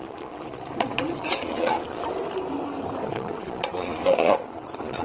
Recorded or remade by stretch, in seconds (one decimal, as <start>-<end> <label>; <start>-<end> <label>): 0.0-2.0 remade; 2.0-3.1 recorded; 3.1-5.0 remade